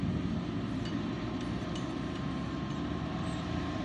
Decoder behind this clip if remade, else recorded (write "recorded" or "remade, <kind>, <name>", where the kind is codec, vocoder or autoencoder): remade, vocoder, BigVGAN v2